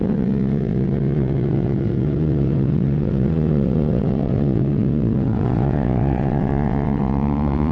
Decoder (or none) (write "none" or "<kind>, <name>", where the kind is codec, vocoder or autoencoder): vocoder, WaveNeXt